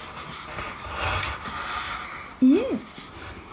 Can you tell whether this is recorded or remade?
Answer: recorded